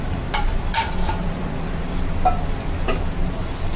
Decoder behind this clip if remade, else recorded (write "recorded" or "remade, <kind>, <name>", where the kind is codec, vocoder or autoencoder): recorded